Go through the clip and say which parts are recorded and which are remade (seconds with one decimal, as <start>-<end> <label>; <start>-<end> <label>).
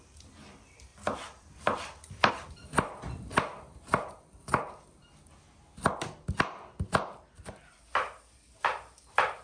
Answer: 0.0-5.0 remade; 5.0-9.0 recorded; 9.0-9.4 remade